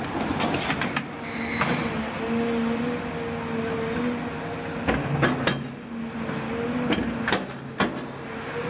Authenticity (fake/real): real